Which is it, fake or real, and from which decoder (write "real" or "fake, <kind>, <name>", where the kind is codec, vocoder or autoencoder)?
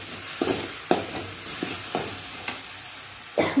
real